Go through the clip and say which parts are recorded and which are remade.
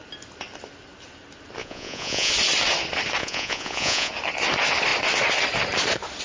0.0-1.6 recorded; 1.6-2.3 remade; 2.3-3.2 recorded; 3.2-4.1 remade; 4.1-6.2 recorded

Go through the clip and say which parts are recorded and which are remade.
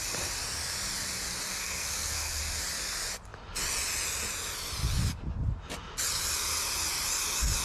0.0-1.5 recorded; 1.5-2.4 remade; 2.4-7.6 recorded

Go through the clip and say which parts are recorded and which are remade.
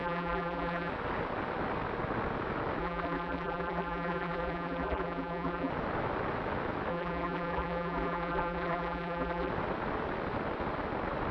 0.0-0.9 remade; 0.9-2.8 recorded; 2.8-5.7 remade; 5.7-6.9 recorded; 6.9-9.5 remade; 9.5-11.3 recorded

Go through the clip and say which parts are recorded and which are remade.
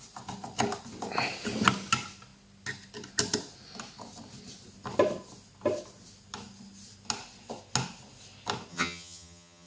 0.0-8.7 recorded; 8.7-9.7 remade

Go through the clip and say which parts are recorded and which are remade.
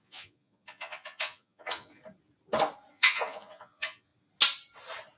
0.0-2.0 remade; 2.0-2.9 recorded; 2.9-4.1 remade; 4.1-5.2 recorded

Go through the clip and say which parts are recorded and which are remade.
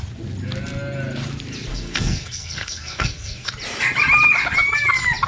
0.0-1.7 recorded; 1.7-3.5 remade; 3.5-5.3 recorded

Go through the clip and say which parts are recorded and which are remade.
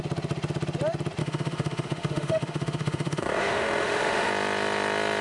0.0-1.2 recorded; 1.2-4.3 remade; 4.3-5.2 recorded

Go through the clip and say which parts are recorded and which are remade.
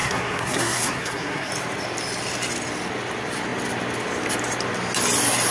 0.0-1.5 remade; 1.5-5.5 recorded